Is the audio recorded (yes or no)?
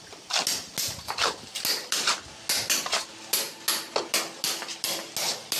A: yes